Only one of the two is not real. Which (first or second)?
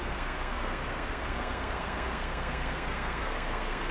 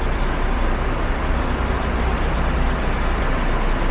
first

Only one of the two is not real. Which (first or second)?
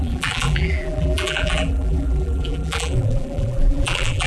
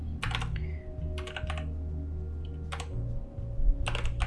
first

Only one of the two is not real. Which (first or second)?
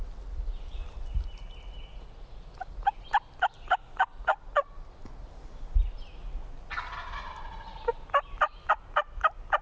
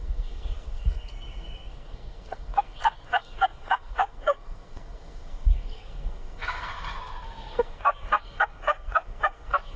second